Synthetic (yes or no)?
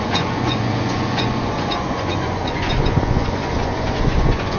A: yes